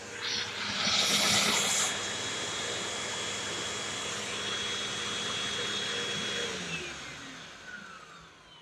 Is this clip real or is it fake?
real